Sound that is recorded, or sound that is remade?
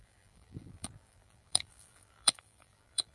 remade